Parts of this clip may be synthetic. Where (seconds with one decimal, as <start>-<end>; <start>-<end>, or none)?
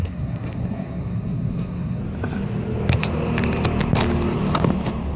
0.0-2.0